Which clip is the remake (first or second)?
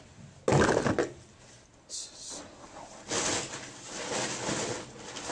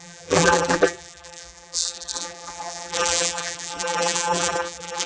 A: second